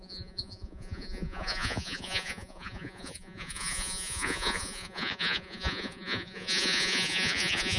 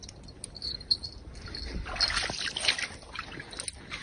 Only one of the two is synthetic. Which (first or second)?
first